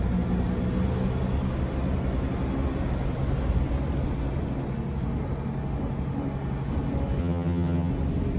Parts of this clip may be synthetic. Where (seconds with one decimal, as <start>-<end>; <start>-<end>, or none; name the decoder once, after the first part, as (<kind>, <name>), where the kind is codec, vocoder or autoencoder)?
7.2-7.9 (vocoder, HiFi-GAN)